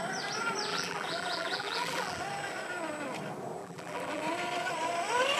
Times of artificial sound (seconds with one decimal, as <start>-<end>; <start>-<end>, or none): 0.7-2.2; 3.6-4.2